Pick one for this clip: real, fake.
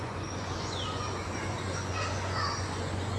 fake